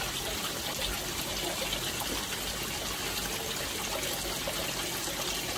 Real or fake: real